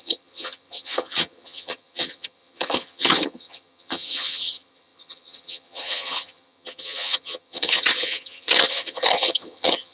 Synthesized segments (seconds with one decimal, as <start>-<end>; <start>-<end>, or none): 0.0-9.9